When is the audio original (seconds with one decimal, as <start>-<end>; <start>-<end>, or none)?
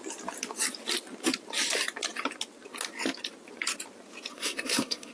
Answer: 0.0-4.3